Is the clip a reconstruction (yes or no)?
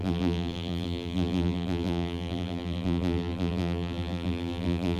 yes